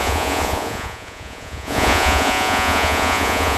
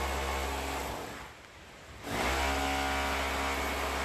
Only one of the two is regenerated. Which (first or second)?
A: first